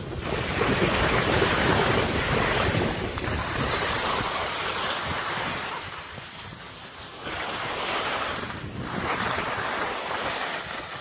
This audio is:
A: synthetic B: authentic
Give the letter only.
B